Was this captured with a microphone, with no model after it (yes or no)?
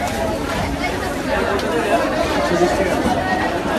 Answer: no